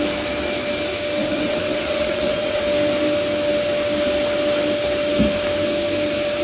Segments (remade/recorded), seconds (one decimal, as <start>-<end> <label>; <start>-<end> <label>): 0.0-1.2 recorded; 1.2-2.6 remade; 2.6-6.4 recorded